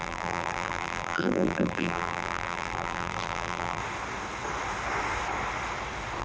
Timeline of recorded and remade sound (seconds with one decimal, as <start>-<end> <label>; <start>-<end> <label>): 0.0-3.8 remade; 3.8-6.2 recorded